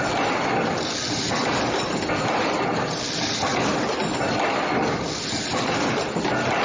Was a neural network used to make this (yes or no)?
no